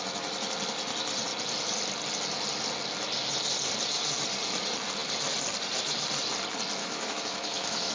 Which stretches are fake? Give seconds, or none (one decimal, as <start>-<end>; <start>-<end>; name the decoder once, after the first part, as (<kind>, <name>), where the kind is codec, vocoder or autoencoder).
6.8-7.9 (autoencoder, DAC-VAE)